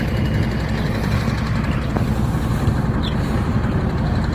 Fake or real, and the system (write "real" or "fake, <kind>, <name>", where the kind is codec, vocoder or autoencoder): fake, vocoder, BigVGAN v2